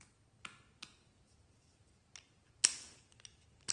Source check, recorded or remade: recorded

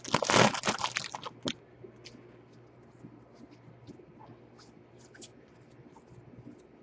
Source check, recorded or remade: recorded